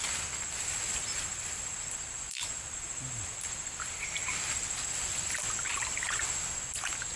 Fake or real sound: real